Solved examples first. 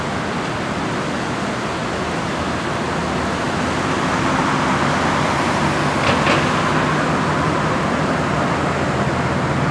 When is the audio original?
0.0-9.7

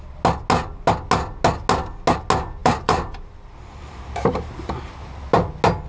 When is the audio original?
0.0-2.6; 5.1-5.9

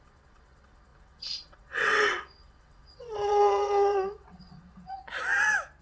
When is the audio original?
5.0-5.8